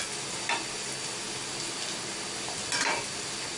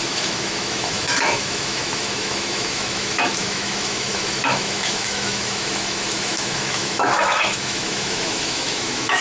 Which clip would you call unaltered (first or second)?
first